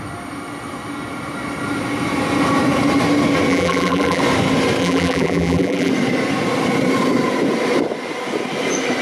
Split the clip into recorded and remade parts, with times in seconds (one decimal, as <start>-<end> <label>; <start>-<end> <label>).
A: 0.0-3.5 recorded; 3.5-4.2 remade; 4.2-4.8 recorded; 4.8-5.9 remade; 5.9-9.0 recorded